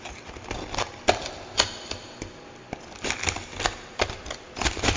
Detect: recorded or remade recorded